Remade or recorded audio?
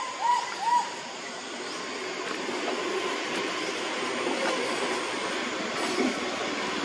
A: recorded